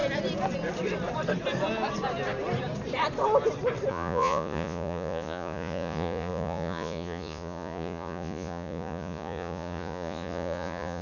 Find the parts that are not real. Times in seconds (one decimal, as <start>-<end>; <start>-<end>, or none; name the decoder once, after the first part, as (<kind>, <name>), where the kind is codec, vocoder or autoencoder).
3.9-11.0 (vocoder, Vocos)